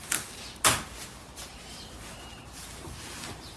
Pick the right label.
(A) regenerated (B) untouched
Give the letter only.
A